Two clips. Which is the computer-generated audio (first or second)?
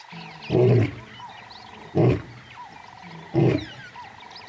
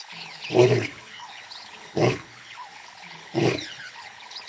second